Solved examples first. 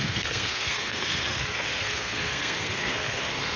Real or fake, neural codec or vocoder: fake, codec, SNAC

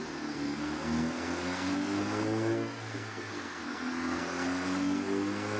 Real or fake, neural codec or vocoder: fake, codec, SNAC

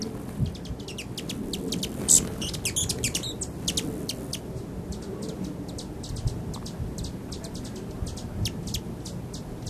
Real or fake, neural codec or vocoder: real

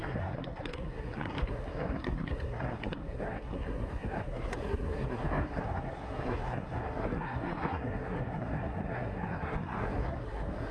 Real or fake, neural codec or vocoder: fake, codec, SNAC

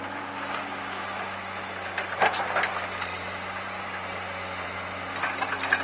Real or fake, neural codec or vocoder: real